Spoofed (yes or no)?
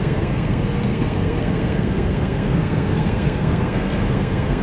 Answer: yes